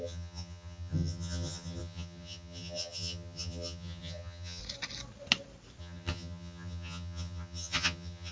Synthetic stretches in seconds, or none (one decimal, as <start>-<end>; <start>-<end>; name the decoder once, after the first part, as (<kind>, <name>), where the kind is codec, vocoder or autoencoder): 0.0-4.6 (vocoder, HiFi-GAN); 5.8-8.3